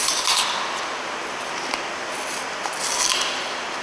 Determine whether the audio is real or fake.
real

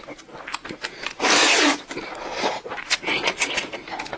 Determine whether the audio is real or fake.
real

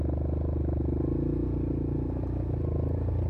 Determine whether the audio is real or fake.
real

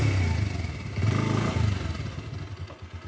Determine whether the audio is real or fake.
real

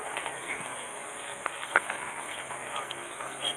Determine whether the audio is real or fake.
fake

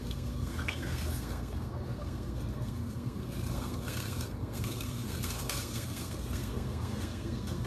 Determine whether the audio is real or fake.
fake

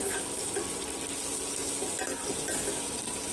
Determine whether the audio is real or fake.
real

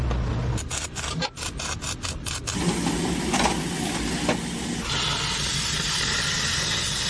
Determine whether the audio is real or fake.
real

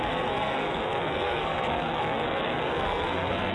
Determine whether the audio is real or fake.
fake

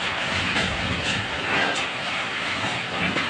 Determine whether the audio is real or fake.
fake